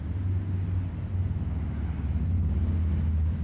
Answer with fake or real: real